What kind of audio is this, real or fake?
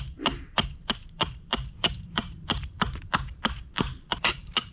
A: fake